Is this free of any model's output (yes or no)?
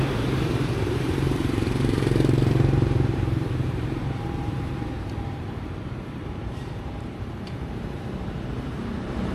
no